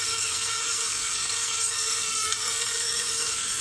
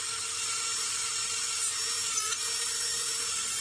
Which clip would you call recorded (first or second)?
second